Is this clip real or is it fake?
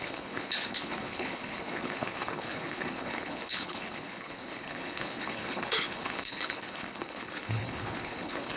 fake